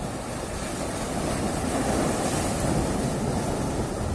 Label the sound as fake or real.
real